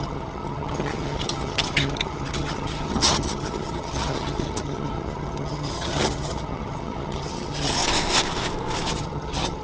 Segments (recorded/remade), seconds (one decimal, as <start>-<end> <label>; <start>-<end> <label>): 0.0-7.8 remade; 7.8-8.9 recorded; 8.9-9.6 remade